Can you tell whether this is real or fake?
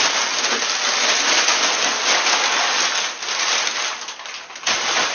real